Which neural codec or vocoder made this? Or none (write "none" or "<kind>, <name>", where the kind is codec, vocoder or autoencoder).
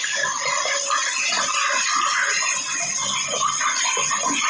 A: none